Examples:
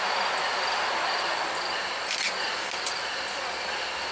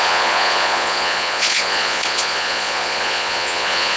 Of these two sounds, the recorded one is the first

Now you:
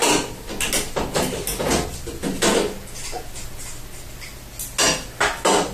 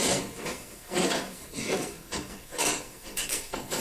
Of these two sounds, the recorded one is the first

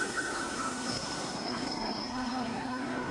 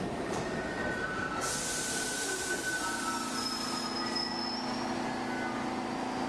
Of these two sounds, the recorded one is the second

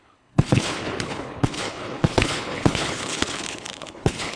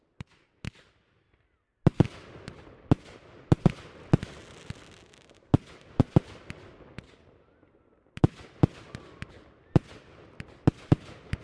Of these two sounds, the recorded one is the second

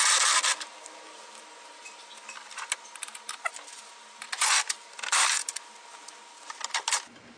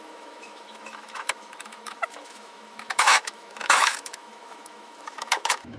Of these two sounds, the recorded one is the first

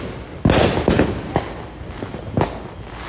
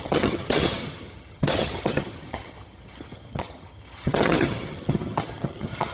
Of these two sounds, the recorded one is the first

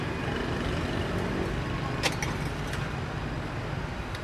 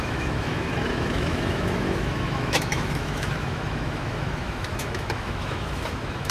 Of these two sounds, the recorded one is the first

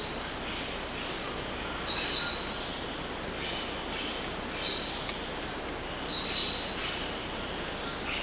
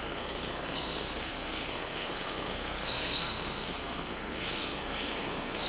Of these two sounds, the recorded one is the first